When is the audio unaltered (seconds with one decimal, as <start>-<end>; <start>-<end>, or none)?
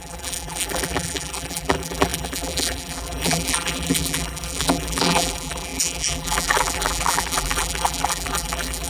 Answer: none